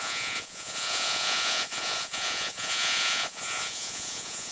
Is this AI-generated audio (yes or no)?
yes